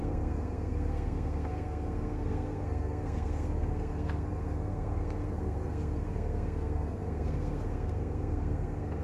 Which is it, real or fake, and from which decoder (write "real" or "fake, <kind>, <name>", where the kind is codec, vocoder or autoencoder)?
fake, codec, SNAC